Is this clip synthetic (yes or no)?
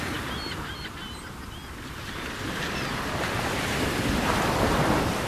no